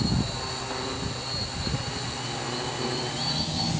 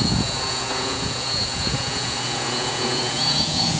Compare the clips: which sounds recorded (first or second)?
first